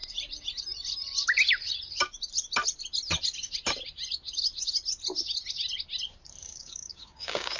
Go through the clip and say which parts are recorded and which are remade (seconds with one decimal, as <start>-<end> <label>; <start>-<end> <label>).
0.0-6.4 recorded; 6.4-7.6 remade